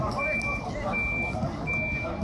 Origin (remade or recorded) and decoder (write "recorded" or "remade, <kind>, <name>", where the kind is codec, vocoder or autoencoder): recorded